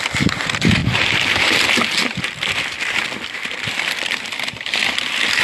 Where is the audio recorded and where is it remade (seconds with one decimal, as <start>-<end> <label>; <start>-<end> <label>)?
0.0-5.4 recorded